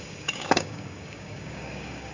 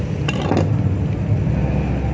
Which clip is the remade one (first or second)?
first